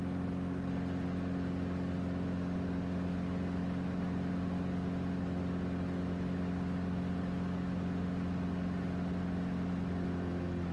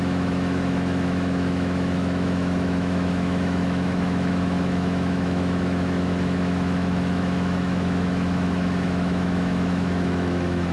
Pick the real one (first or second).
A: first